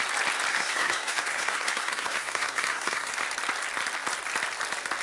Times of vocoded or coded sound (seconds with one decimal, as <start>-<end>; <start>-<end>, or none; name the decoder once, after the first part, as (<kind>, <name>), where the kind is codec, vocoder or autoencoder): 0.5-3.1 (codec, SNAC)